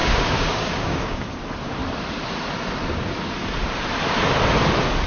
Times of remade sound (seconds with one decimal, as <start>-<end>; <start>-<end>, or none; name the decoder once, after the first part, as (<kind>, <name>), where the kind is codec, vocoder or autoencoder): 0.0-1.4 (codec, DAC)